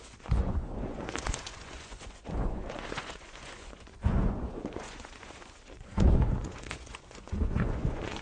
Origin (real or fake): fake